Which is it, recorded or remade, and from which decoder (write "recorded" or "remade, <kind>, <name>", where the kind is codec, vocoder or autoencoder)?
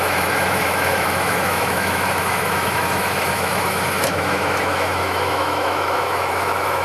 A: remade, autoencoder, DAC-VAE